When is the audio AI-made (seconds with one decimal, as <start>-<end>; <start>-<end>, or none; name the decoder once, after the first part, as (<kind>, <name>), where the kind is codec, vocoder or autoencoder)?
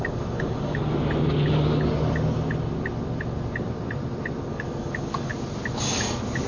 0.0-0.8 (codec, DAC); 4.5-5.3